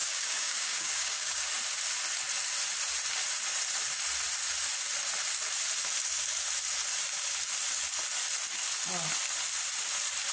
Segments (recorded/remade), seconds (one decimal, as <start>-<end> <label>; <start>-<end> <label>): 0.0-1.5 remade; 1.5-10.3 recorded